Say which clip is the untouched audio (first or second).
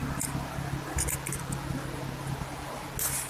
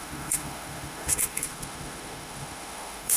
first